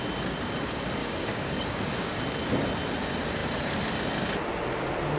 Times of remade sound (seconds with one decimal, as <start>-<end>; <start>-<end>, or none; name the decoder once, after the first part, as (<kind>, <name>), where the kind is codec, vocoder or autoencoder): 1.0-2.2 (codec, DAC)

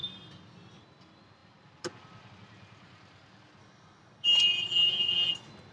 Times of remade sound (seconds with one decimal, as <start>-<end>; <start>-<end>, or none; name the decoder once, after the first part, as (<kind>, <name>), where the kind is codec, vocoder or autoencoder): 3.6-4.4 (codec, DAC)

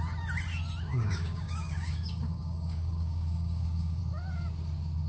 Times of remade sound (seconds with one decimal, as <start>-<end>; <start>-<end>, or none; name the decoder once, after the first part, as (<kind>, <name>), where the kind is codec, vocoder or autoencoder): 0.9-4.0 (codec, DAC)

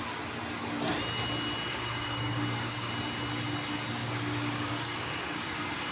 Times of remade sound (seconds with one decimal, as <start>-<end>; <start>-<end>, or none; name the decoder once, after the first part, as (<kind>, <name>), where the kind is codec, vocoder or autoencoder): 1.7-2.9 (codec, DAC); 4.0-5.9

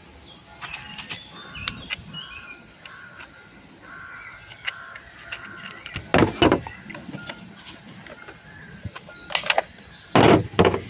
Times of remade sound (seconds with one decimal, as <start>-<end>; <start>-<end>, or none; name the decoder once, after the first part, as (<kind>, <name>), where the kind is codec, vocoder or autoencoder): none

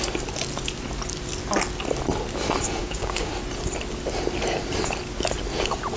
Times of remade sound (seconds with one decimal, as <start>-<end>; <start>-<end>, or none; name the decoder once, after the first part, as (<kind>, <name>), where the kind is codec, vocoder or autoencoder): 2.8-3.3 (codec, DAC)